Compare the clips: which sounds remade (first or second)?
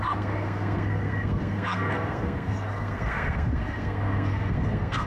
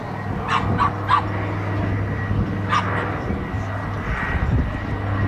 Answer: first